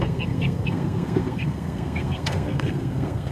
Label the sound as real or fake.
fake